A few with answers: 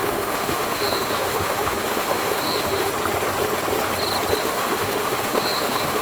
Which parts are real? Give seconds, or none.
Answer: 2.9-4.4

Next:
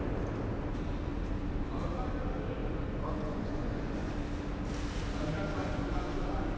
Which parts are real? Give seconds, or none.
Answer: 0.0-2.6; 4.1-5.6; 6.1-6.6

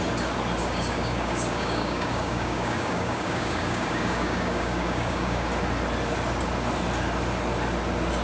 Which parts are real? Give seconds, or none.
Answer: 0.0-0.6; 5.5-8.2

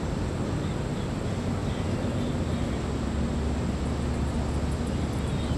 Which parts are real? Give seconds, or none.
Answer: 0.0-5.6

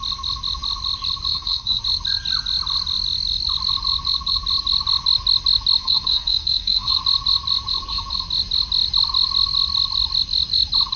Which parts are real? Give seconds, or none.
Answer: 0.0-1.3; 1.8-5.8; 7.0-11.0

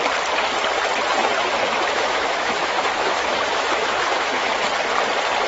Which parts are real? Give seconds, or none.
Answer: 0.0-1.2; 4.5-5.5

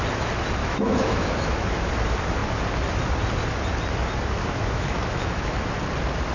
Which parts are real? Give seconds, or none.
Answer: 0.0-0.6; 1.9-4.4; 5.7-6.3

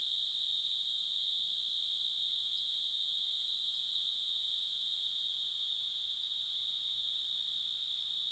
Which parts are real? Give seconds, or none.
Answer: 0.0-0.5; 1.4-2.2; 7.2-8.3